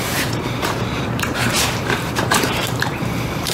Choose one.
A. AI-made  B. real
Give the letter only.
A